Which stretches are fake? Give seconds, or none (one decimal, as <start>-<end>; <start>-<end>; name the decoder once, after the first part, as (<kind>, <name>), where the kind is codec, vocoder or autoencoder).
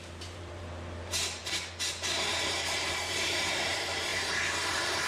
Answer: 0.0-1.4 (vocoder, BigVGAN v2); 2.3-5.1